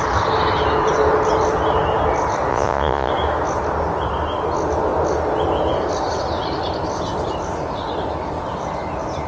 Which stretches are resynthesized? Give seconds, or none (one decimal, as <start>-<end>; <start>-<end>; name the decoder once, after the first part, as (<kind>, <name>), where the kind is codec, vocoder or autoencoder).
2.5-3.1 (vocoder, Vocos)